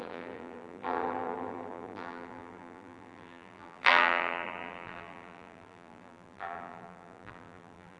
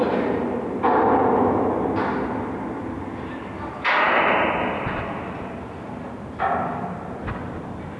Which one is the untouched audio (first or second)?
second